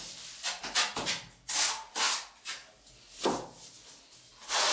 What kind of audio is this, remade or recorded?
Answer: recorded